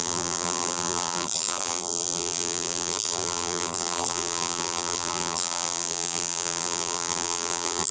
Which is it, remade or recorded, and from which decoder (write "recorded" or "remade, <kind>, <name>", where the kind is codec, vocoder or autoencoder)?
remade, vocoder, BigVGAN v2